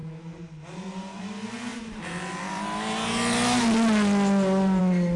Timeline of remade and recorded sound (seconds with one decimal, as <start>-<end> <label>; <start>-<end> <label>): 0.0-1.2 remade; 1.2-5.2 recorded

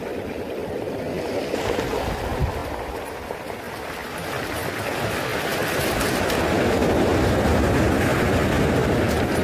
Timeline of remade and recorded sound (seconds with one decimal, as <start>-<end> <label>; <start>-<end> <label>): 0.0-9.4 recorded

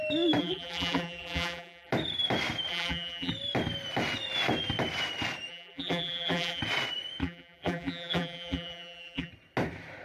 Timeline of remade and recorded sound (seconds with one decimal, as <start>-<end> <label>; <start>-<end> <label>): 0.0-0.4 recorded; 0.4-1.9 remade; 1.9-2.7 recorded; 2.7-3.3 remade; 3.3-5.5 recorded; 5.5-6.6 remade; 6.6-7.2 recorded; 7.2-9.3 remade; 9.3-10.0 recorded

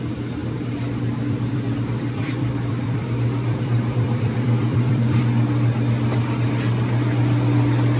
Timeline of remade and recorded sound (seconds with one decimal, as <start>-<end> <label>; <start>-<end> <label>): 0.0-0.4 recorded; 0.4-5.2 remade; 5.2-8.0 recorded